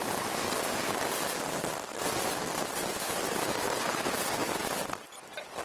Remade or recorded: recorded